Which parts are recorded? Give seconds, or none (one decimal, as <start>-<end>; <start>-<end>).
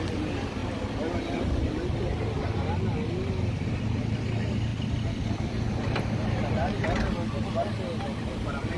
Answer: 0.0-8.8